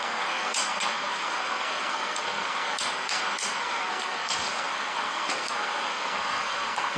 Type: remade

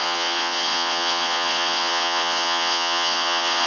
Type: remade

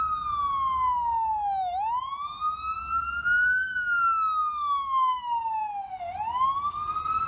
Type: recorded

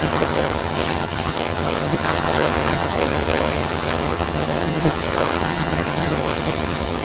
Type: remade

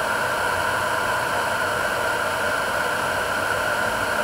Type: recorded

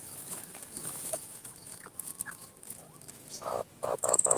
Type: remade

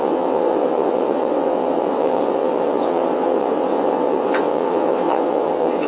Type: remade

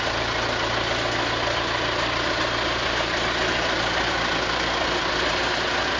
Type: recorded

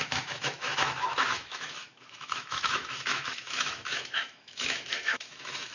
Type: remade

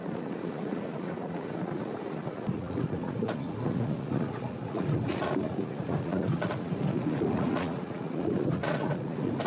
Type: remade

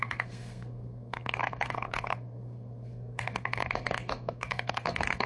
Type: remade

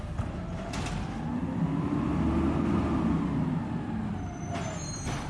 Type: recorded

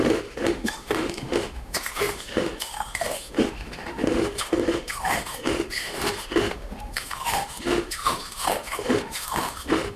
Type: remade